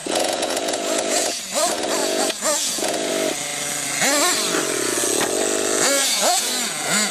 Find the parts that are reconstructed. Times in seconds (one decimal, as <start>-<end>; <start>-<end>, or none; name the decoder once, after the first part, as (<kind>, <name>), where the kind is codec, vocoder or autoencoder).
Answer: 0.0-1.4 (vocoder, Vocos); 2.0-3.1; 6.0-6.5